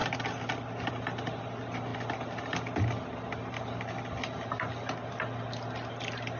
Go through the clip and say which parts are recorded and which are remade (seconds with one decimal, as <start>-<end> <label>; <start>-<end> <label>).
0.0-6.4 recorded